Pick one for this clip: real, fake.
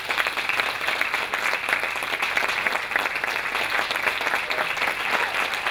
real